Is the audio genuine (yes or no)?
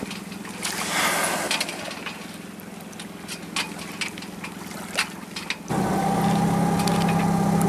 yes